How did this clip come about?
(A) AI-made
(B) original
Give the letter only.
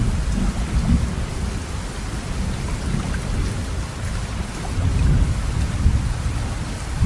B